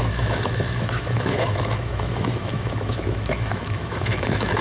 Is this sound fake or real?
fake